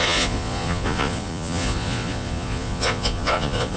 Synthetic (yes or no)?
yes